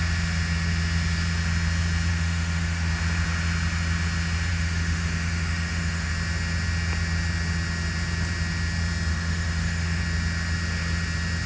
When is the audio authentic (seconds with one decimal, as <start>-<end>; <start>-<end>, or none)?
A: 0.0-2.1; 2.9-4.5; 6.1-9.1; 10.0-11.5